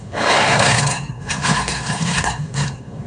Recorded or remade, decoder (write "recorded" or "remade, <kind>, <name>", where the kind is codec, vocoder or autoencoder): remade, codec, SNAC